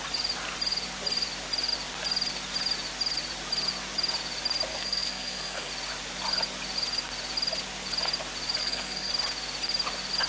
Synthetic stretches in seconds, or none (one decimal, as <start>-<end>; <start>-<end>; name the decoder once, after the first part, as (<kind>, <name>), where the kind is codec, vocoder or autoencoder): 4.7-5.7 (codec, SNAC); 8.6-9.1